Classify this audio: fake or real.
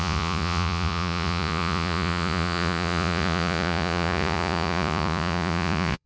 fake